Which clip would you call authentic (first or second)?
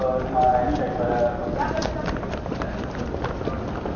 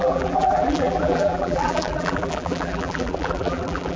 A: first